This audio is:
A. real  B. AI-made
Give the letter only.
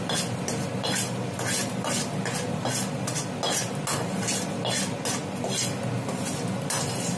A